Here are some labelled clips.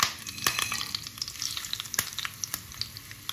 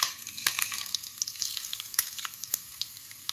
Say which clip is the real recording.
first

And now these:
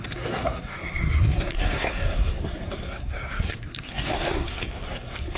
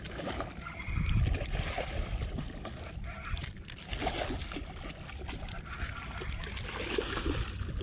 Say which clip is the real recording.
second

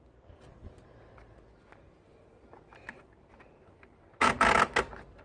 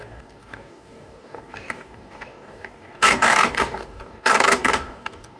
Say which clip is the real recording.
first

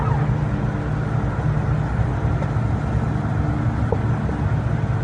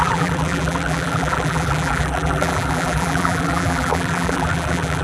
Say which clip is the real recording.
first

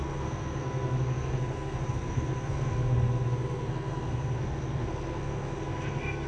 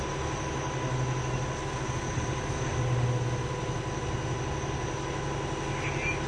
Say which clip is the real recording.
second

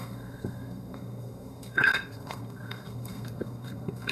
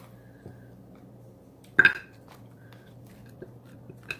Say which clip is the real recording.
second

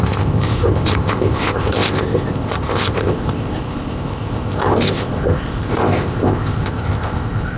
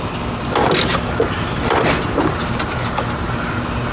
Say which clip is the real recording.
second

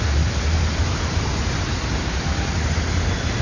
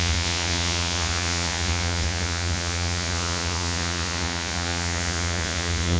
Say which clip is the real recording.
first